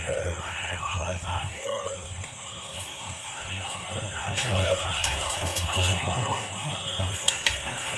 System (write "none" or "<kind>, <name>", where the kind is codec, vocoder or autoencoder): codec, SNAC